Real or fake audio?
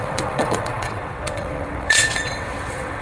fake